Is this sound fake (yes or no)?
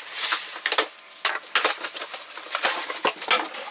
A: no